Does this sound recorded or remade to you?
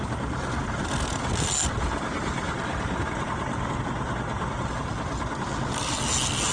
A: recorded